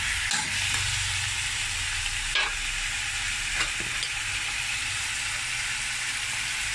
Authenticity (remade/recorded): recorded